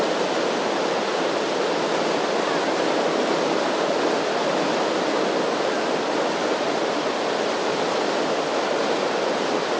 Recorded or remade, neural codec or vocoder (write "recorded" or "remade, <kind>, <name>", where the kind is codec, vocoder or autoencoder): recorded